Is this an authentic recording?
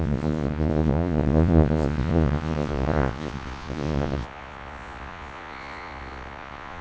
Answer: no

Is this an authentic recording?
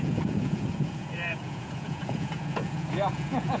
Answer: no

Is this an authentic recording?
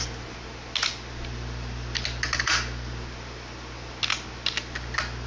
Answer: yes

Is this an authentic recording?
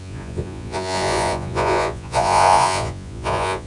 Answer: no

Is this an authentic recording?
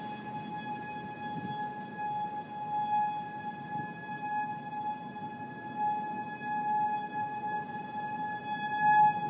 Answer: yes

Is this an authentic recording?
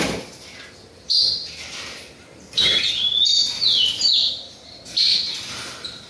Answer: yes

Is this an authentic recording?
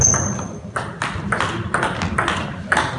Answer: yes